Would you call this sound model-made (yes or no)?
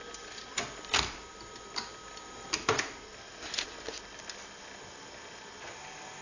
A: no